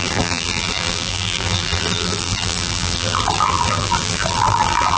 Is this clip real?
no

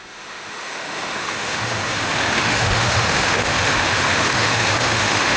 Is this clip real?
no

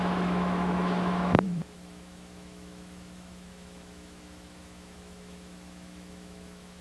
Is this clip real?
no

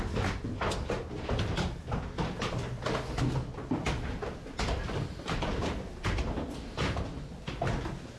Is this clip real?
yes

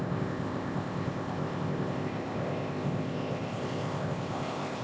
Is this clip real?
no